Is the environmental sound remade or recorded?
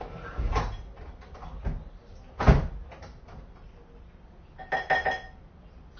recorded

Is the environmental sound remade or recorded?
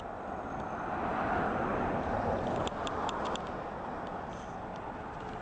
remade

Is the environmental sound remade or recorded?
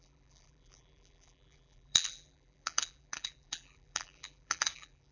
remade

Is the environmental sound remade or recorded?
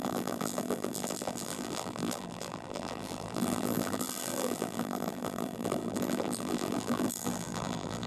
remade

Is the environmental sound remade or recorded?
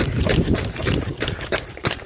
remade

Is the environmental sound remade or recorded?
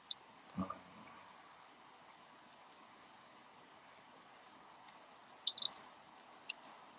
recorded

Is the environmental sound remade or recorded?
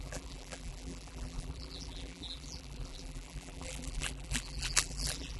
remade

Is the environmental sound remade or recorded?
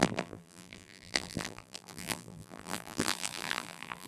remade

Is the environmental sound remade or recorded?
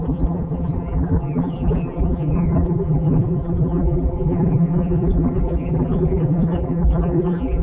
remade